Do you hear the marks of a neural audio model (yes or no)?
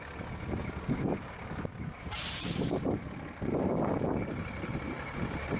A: no